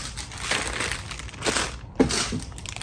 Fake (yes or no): no